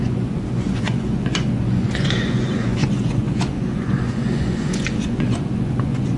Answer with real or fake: fake